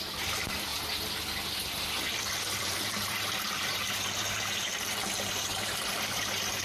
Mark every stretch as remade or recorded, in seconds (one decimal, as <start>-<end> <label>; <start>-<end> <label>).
0.0-0.7 remade; 0.7-2.6 recorded; 2.6-6.6 remade